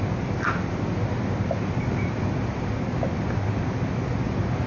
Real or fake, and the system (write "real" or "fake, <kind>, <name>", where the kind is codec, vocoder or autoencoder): real